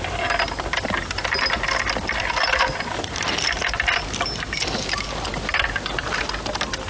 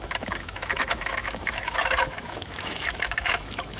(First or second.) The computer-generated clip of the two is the second